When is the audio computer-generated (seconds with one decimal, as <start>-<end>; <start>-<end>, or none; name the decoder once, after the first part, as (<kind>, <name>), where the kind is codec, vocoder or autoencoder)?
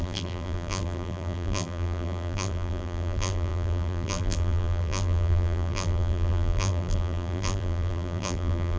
0.0-8.8 (vocoder, BigVGAN v2)